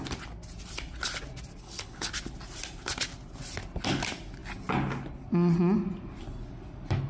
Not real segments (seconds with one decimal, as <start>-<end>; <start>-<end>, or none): 1.6-2.1